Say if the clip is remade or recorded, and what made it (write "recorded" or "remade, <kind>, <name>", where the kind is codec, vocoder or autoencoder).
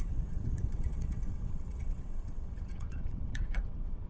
remade, vocoder, WaveNeXt